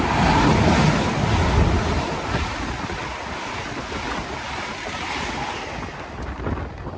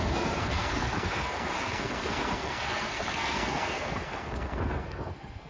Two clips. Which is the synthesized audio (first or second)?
second